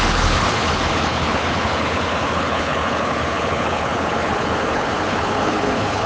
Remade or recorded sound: remade